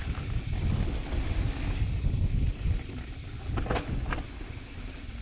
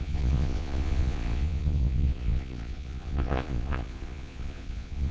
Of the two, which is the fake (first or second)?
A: second